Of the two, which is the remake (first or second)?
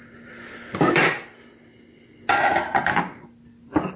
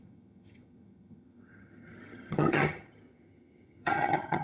second